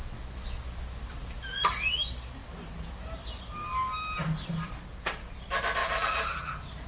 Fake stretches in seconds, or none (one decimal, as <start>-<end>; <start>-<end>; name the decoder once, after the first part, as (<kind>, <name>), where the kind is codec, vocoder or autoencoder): 1.1-2.0 (vocoder, BigVGAN v2); 5.8-6.5